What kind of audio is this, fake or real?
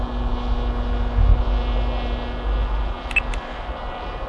real